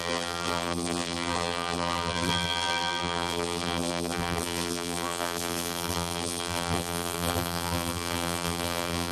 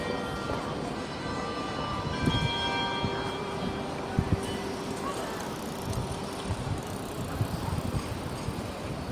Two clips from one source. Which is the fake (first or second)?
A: first